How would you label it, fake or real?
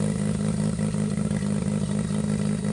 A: real